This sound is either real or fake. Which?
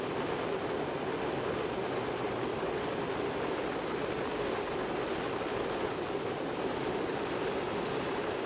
real